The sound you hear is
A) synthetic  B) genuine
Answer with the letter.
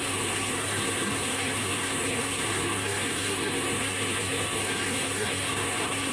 A